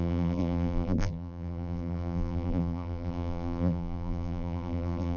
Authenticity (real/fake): fake